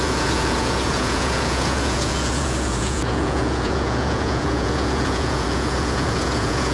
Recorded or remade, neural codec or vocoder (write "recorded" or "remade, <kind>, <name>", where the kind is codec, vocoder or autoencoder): remade, vocoder, Vocos